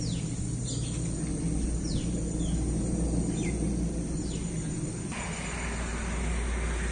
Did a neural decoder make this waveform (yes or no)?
no